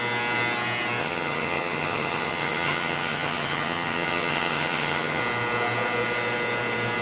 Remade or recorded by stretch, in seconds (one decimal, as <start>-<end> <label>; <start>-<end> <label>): 0.0-1.0 recorded; 1.0-5.2 remade; 5.2-7.0 recorded